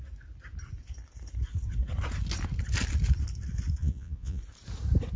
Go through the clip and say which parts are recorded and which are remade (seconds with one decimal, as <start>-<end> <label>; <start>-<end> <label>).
0.0-3.8 recorded; 3.8-4.4 remade; 4.4-5.2 recorded